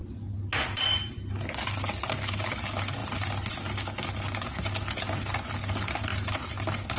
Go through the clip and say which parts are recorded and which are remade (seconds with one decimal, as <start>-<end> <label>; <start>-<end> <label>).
0.0-2.5 remade; 2.5-6.1 recorded; 6.1-7.0 remade